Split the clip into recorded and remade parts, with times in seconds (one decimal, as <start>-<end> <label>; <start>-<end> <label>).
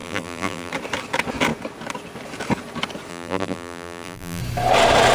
0.0-0.7 remade; 0.7-3.1 recorded; 3.1-4.4 remade; 4.4-5.1 recorded